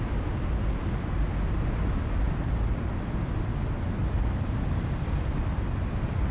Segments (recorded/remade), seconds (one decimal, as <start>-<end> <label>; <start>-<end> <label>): 0.0-4.0 recorded; 4.0-4.6 remade; 4.6-6.3 recorded